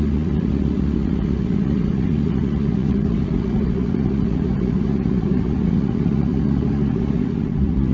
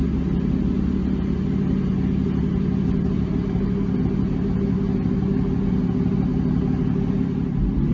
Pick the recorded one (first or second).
second